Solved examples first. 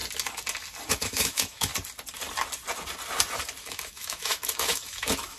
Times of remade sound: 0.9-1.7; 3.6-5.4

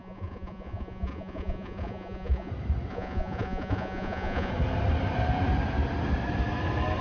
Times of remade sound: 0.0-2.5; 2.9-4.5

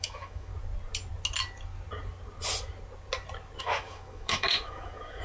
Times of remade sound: 0.0-0.5; 3.6-5.2